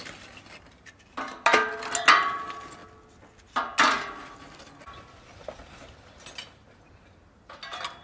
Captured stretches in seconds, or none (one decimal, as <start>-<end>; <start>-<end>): 0.0-8.0